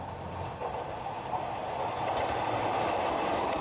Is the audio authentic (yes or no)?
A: yes